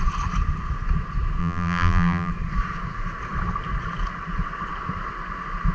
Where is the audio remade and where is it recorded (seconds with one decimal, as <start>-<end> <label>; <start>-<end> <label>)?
0.0-1.4 recorded; 1.4-2.3 remade; 2.3-5.7 recorded